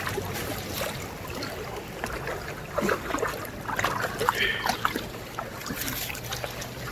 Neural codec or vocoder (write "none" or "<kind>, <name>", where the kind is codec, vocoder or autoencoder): none